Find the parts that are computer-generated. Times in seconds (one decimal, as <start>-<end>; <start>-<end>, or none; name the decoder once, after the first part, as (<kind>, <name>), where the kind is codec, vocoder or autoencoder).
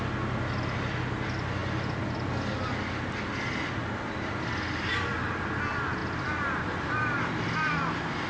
4.9-5.6 (vocoder, BigVGAN v2); 6.0-7.7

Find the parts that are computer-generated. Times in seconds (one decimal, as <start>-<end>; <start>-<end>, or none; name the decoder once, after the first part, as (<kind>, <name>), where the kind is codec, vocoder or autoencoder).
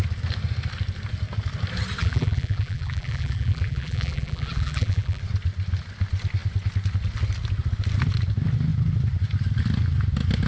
2.0-5.2 (vocoder, BigVGAN v2)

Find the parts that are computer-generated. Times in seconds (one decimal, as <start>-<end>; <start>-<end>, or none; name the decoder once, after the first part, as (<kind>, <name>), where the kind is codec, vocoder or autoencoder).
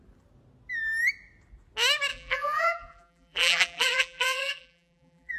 2.1-5.4 (vocoder, BigVGAN v2)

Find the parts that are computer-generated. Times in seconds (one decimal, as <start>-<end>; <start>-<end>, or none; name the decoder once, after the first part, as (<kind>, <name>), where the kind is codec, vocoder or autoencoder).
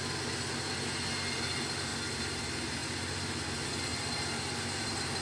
1.9-2.4 (vocoder, BigVGAN v2); 3.9-5.2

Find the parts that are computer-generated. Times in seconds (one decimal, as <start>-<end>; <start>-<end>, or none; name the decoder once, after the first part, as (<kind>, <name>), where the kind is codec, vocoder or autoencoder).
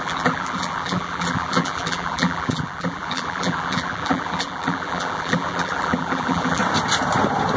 0.0-6.6 (vocoder, BigVGAN v2)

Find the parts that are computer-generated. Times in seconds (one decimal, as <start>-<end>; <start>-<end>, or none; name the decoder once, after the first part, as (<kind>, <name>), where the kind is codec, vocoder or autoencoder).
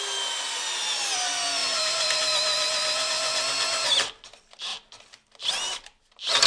1.6-2.2 (vocoder, BigVGAN v2)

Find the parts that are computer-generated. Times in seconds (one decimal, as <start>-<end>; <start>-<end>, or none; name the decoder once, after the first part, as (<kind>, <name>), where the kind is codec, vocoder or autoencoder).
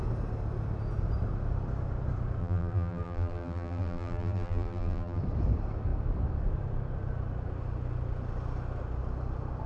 2.4-5.2 (vocoder, BigVGAN v2)